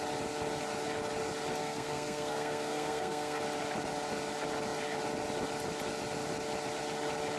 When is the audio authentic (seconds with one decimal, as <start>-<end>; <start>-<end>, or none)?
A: 0.0-1.6; 3.4-7.4